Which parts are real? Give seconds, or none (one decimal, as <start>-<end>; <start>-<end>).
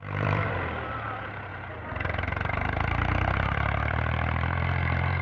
none